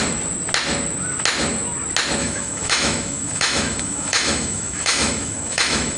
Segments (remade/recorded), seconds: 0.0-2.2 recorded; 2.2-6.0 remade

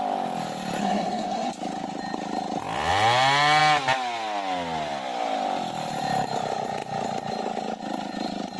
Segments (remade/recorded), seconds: 0.0-0.8 recorded; 0.8-1.5 remade; 1.5-8.6 recorded